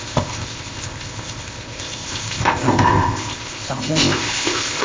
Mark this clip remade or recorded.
remade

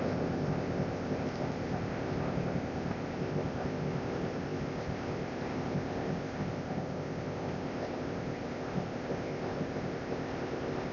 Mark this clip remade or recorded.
remade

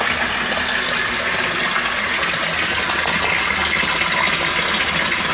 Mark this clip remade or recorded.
recorded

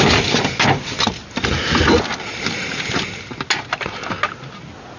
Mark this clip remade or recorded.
recorded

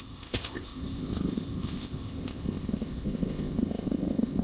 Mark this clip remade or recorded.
remade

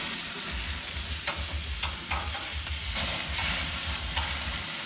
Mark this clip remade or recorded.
recorded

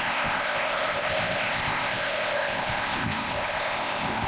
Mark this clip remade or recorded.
remade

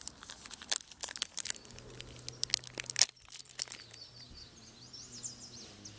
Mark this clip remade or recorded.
recorded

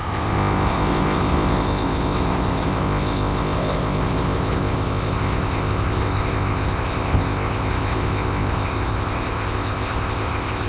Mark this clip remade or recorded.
remade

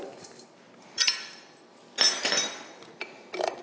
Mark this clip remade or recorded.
recorded